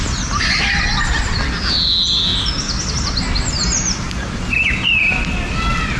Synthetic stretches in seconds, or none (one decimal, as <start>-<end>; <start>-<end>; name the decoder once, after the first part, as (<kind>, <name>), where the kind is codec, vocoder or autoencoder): none